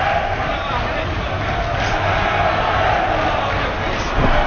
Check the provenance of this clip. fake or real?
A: real